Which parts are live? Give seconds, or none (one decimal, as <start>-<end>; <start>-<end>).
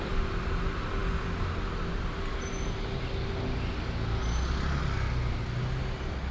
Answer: 0.0-6.3